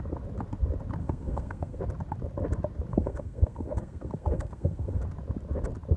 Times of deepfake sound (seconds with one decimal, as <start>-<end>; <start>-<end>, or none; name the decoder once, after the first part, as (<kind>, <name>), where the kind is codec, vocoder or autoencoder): 1.0-1.8 (codec, SNAC); 2.9-5.0